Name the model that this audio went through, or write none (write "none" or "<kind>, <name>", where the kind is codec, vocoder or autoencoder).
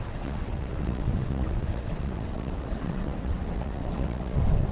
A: vocoder, WaveNeXt